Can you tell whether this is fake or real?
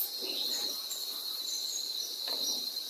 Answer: fake